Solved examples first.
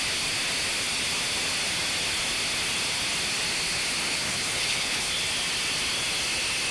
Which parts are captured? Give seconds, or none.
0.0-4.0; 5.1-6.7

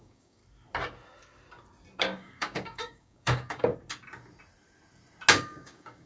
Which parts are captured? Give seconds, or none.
0.4-2.0; 3.7-5.3

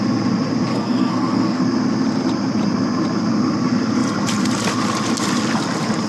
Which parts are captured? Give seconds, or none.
0.0-0.7; 1.6-6.1